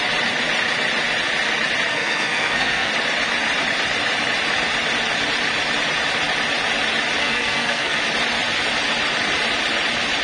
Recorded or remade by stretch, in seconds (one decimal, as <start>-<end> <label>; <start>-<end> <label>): 0.0-1.9 recorded; 1.9-2.9 remade; 2.9-7.2 recorded; 7.2-8.0 remade; 8.0-10.2 recorded